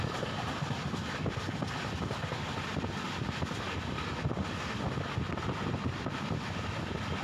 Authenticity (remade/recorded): recorded